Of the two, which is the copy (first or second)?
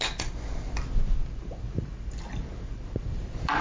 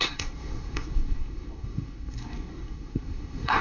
second